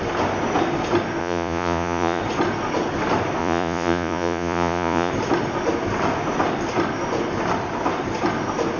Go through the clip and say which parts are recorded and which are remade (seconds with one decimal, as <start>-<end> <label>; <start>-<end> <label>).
0.0-1.2 recorded; 1.2-2.2 remade; 2.2-3.4 recorded; 3.4-5.1 remade; 5.1-8.8 recorded